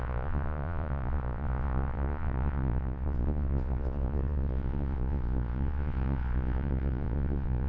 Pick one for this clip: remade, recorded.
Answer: remade